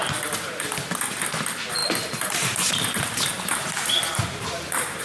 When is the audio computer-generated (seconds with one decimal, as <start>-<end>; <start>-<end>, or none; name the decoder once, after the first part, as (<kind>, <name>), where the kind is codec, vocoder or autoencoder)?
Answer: 1.8-5.0 (vocoder, BigVGAN v2)